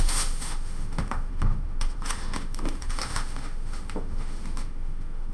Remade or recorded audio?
remade